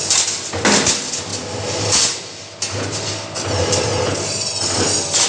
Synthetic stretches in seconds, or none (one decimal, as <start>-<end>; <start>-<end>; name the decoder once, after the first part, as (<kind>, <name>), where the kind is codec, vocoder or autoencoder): none